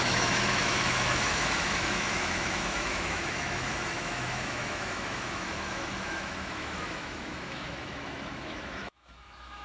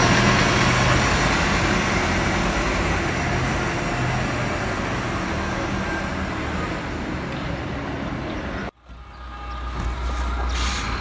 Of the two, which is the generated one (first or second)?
first